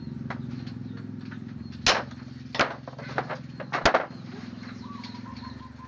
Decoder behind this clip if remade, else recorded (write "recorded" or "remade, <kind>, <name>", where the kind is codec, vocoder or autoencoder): recorded